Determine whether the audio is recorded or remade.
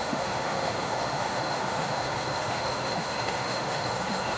remade